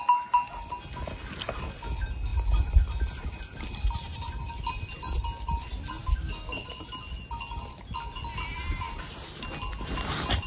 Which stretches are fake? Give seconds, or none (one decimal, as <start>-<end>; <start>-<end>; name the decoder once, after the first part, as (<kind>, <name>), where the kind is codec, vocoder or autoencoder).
6.0-6.8 (codec, DAC)